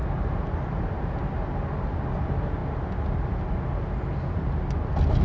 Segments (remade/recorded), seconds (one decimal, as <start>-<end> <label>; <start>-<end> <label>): 0.0-5.2 recorded